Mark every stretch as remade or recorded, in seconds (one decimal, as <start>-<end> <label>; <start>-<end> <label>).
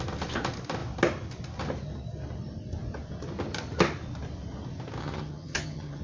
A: 0.0-5.0 recorded; 5.0-6.0 remade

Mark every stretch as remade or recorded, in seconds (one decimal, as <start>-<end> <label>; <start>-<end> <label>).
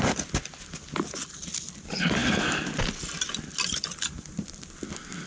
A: 0.0-5.3 recorded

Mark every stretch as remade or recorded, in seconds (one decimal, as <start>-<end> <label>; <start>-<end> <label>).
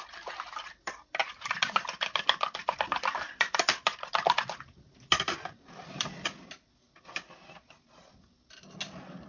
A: 0.0-9.3 recorded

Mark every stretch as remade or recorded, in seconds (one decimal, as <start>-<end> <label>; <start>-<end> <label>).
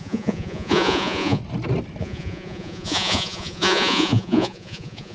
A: 0.0-1.4 remade; 1.4-2.0 recorded; 2.0-5.1 remade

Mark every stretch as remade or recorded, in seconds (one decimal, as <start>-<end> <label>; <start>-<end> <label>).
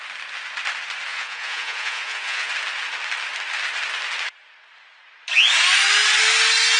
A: 0.0-1.1 recorded; 1.1-2.5 remade; 2.5-6.8 recorded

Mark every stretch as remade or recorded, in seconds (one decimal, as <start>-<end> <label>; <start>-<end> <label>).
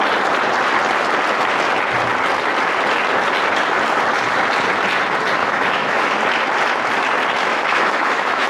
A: 0.0-5.4 recorded; 5.4-6.1 remade; 6.1-7.5 recorded; 7.5-8.5 remade